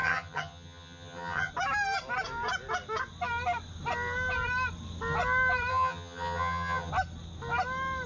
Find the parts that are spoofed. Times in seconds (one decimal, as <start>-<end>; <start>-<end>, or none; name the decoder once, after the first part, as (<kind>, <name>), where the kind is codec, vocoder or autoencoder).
0.0-1.5 (vocoder, HiFi-GAN); 5.7-6.9